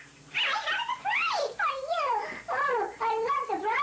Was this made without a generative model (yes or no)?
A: yes